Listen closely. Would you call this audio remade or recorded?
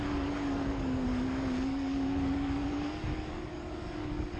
remade